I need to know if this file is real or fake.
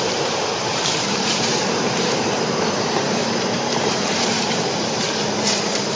fake